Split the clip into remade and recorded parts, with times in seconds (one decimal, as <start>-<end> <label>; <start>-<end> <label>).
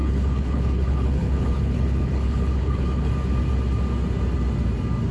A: 0.0-3.1 remade; 3.1-5.1 recorded